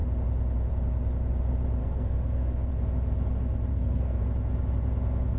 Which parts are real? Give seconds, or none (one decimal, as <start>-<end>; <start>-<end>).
0.0-1.8; 2.7-3.7; 4.2-5.4